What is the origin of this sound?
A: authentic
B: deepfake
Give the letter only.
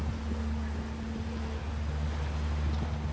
A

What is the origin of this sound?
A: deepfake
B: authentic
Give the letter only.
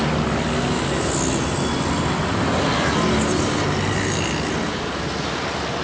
B